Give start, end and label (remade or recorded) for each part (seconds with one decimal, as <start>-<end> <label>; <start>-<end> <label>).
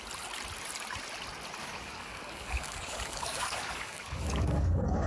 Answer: 0.0-1.6 recorded; 1.6-5.1 remade